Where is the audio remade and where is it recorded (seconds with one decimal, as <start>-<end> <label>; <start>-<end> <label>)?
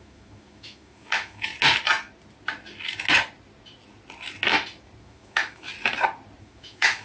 0.0-1.5 remade; 1.5-5.0 recorded; 5.0-5.7 remade; 5.7-6.4 recorded; 6.4-7.0 remade